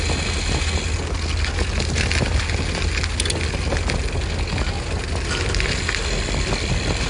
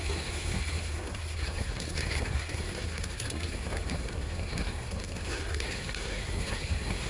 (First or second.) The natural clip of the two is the first